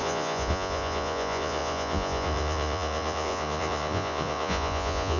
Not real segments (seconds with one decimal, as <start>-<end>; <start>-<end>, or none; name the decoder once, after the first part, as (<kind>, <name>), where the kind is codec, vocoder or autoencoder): 0.0-5.2 (vocoder, Vocos)